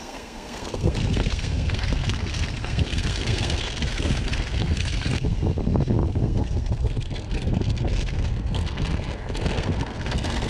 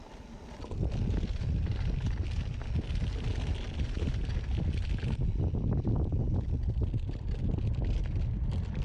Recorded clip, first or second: second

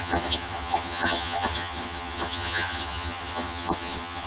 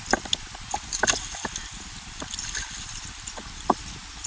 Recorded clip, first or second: second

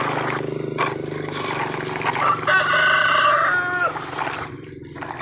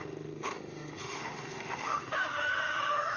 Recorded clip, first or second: first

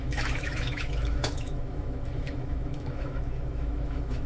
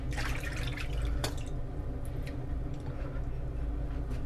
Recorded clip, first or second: second